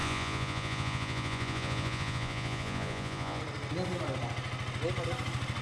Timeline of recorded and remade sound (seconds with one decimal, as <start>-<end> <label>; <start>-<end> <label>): 0.0-3.4 remade; 3.4-5.6 recorded